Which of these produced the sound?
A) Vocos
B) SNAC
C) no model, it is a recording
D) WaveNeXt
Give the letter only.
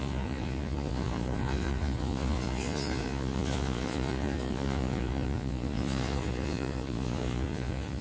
A